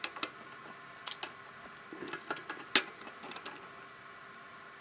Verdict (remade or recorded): recorded